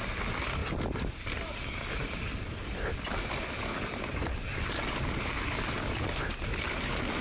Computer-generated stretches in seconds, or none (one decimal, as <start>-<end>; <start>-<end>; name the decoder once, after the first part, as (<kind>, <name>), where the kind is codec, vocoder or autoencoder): none